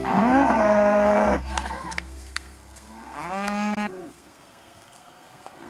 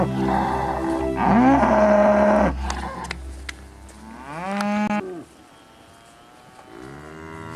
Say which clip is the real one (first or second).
second